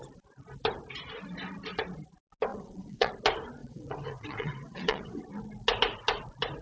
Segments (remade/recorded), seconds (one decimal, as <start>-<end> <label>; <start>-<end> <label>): 0.0-2.5 recorded; 2.5-3.1 remade; 3.1-3.6 recorded; 3.6-5.2 remade; 5.2-6.6 recorded